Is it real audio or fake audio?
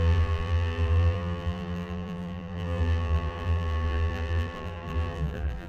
fake